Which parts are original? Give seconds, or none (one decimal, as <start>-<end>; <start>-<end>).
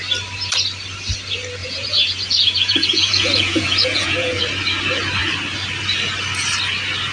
0.0-1.6; 4.4-7.1